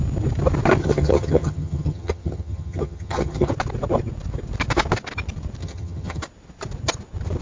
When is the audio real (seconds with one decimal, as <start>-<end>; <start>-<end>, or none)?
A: 0.0-0.8; 3.5-5.6; 6.2-7.4